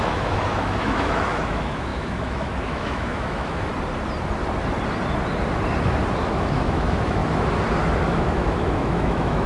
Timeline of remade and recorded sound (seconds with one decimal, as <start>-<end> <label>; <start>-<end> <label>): 0.0-3.7 remade; 3.7-6.2 recorded; 6.2-7.2 remade; 7.2-8.1 recorded; 8.1-9.5 remade